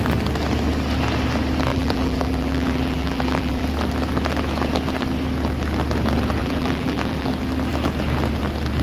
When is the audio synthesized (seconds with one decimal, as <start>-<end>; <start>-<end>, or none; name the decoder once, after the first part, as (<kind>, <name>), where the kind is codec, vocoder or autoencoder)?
1.7-3.7 (vocoder, BigVGAN v2); 6.4-7.3